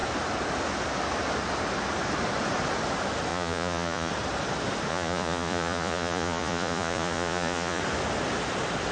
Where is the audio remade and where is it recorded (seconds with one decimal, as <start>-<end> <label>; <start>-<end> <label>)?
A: 0.0-3.3 recorded; 3.3-4.1 remade; 4.1-4.9 recorded; 4.9-7.8 remade; 7.8-8.9 recorded